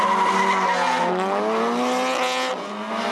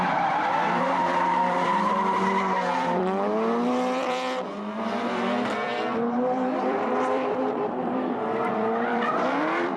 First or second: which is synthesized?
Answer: second